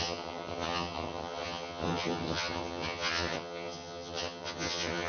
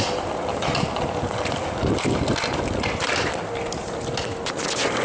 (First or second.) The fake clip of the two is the first